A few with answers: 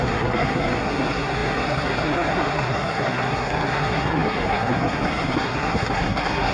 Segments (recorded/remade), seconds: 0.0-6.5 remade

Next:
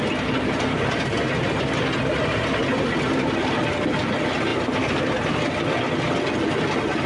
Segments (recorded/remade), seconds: 0.0-7.1 recorded

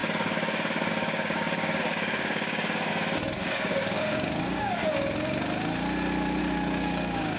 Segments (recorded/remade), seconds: 0.0-2.9 remade; 2.9-3.7 recorded; 3.7-4.8 remade; 4.8-6.4 recorded; 6.4-7.4 remade

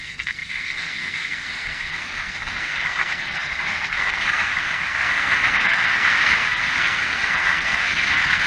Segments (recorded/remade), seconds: 0.0-8.5 remade

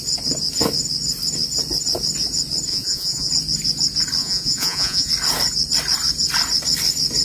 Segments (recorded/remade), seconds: 0.0-2.7 recorded; 2.7-3.3 remade; 3.3-4.2 recorded; 4.2-5.1 remade; 5.1-7.2 recorded

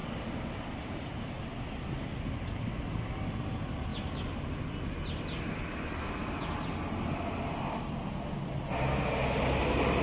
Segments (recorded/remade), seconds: 0.0-10.0 recorded